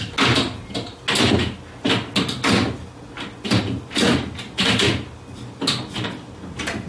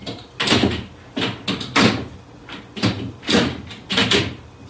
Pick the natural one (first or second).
first